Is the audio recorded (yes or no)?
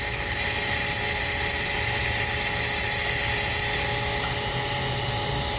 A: yes